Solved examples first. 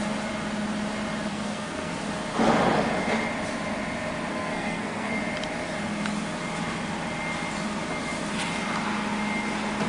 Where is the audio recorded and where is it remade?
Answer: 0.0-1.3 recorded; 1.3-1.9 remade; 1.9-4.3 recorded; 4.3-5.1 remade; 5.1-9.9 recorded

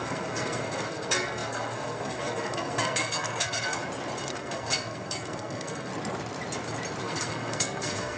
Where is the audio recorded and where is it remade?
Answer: 0.0-3.8 remade; 3.8-4.3 recorded; 4.3-5.9 remade; 5.9-7.0 recorded; 7.0-8.2 remade

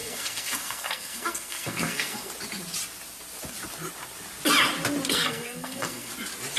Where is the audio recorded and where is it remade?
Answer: 0.0-2.3 remade; 2.3-5.1 recorded; 5.1-6.1 remade; 6.1-6.6 recorded

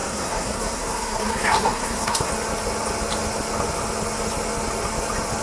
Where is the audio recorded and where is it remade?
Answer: 0.0-2.3 remade; 2.3-5.4 recorded

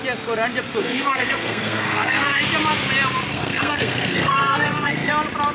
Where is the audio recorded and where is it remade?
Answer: 0.0-0.8 recorded; 0.8-2.4 remade; 2.4-3.3 recorded; 3.3-5.1 remade; 5.1-5.5 recorded

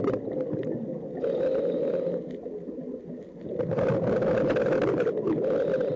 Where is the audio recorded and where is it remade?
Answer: 0.0-6.0 recorded

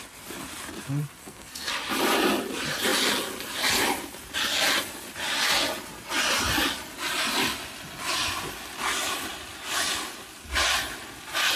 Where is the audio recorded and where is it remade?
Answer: 0.0-1.2 recorded; 1.2-1.7 remade; 1.7-11.6 recorded

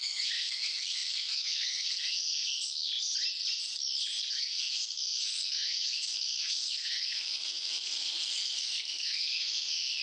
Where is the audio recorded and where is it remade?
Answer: 0.0-2.9 remade; 2.9-4.3 recorded; 4.3-10.0 remade